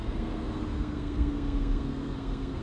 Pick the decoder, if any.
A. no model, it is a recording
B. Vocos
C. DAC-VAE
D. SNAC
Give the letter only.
D